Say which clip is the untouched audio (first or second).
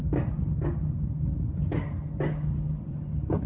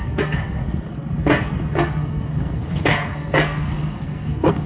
first